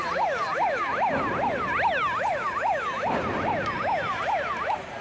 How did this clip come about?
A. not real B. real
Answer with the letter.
B